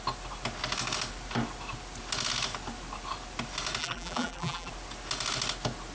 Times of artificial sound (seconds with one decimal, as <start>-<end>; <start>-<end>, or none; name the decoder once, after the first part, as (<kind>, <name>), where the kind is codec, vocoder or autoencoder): 3.8-4.7 (vocoder, BigVGAN v2)